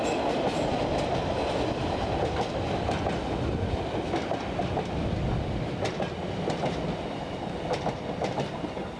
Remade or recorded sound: recorded